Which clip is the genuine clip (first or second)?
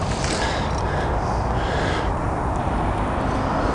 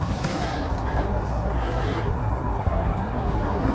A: first